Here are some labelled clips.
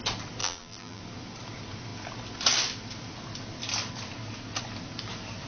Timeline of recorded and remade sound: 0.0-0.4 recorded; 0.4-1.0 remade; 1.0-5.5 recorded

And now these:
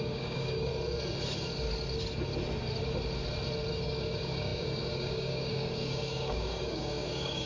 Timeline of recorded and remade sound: 0.0-0.7 remade; 0.7-3.7 recorded; 3.7-7.5 remade

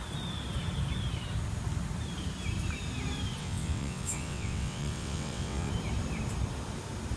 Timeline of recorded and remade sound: 0.0-3.4 recorded; 3.4-5.7 remade; 5.7-7.2 recorded